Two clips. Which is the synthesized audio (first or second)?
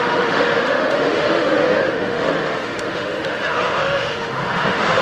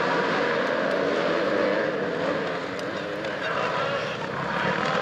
first